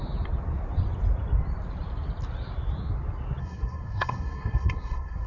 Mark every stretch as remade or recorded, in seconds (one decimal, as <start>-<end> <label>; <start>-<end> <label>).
0.0-3.4 recorded; 3.4-5.3 remade